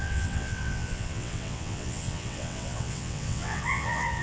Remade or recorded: remade